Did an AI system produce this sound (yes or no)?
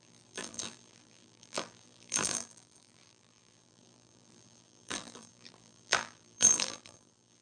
yes